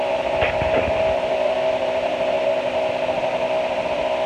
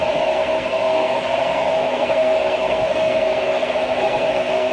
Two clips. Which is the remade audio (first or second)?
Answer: second